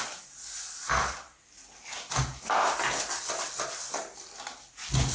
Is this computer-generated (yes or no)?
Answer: no